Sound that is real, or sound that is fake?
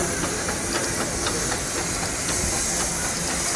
real